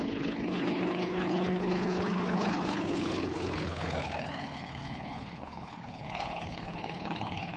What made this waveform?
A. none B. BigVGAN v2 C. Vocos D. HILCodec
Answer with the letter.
D